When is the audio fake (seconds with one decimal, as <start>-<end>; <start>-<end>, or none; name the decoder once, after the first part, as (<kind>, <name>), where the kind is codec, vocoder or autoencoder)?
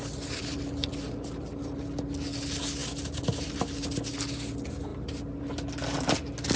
none